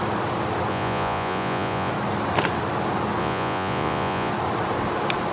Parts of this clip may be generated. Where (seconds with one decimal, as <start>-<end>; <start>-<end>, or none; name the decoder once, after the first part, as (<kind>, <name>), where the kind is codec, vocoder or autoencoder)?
0.7-1.9 (vocoder, Vocos); 3.2-4.3